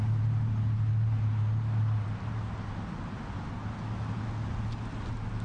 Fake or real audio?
real